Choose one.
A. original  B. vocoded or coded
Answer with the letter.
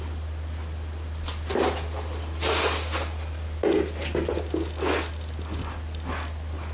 A